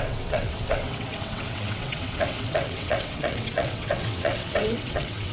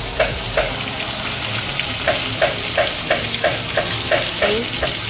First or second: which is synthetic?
first